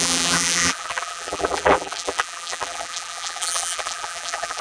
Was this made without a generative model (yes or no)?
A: no